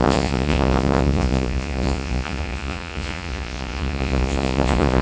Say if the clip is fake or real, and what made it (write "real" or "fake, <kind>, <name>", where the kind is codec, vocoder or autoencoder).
fake, vocoder, Vocos